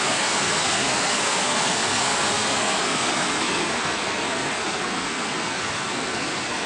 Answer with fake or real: fake